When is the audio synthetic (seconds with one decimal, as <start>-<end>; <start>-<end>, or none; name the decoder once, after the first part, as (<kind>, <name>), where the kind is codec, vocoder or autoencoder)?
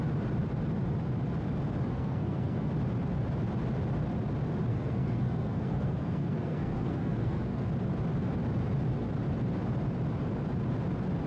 1.9-2.7 (codec, SNAC); 4.7-7.7